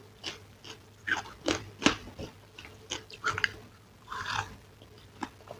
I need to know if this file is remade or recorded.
recorded